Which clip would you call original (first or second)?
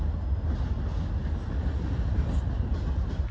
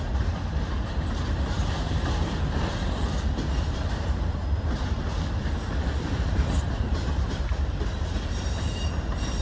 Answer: first